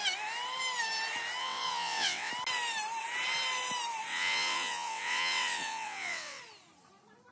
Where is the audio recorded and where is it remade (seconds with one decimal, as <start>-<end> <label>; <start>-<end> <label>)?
0.0-1.4 recorded; 1.4-2.3 remade; 2.3-4.1 recorded; 4.1-6.4 remade; 6.4-7.3 recorded